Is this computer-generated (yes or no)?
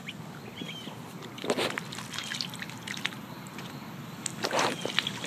no